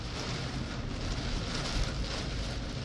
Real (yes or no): yes